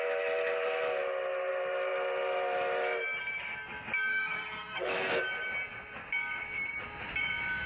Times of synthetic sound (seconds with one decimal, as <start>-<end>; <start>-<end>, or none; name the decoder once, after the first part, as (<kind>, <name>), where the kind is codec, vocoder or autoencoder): 4.1-5.1 (codec, SNAC)